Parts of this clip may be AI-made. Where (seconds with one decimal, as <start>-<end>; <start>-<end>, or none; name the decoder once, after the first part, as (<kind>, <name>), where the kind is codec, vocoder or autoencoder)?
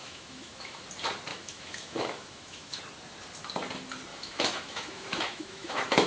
0.0-0.8 (autoencoder, DAC-VAE); 1.3-2.8; 4.1-6.1